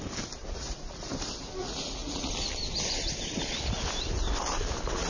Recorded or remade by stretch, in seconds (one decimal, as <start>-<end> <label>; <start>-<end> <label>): 0.0-0.4 recorded; 0.4-1.1 remade; 1.1-1.6 recorded; 1.6-2.3 remade; 2.3-5.1 recorded